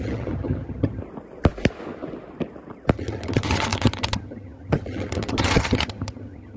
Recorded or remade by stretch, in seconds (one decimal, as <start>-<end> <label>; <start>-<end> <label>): 0.0-1.0 remade; 1.0-2.9 recorded; 2.9-6.6 remade